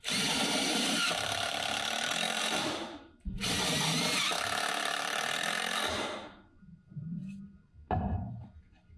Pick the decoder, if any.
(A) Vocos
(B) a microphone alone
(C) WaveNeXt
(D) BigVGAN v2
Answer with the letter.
D